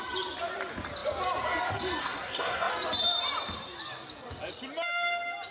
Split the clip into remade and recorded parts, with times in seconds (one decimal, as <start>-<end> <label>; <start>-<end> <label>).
0.0-2.0 recorded; 2.0-2.7 remade; 2.7-5.5 recorded